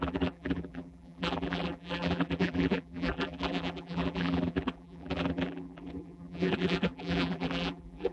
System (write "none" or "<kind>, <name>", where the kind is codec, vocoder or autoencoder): vocoder, BigVGAN v2